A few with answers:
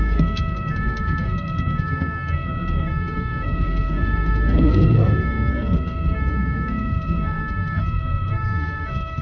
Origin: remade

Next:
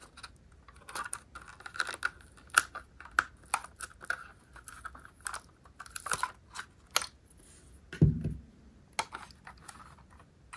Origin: recorded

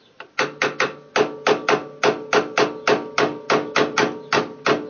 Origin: recorded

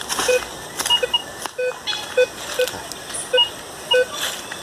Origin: recorded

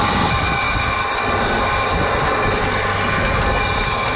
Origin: recorded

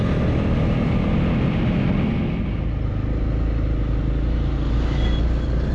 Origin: recorded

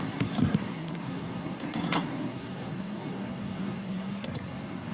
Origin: remade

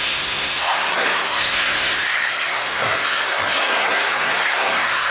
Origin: remade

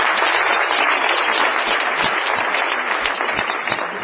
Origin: recorded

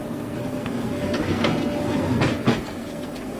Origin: remade